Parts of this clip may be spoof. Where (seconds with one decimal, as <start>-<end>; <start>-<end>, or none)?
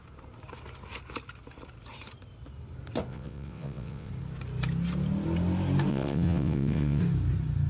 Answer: 3.1-4.1; 5.9-7.0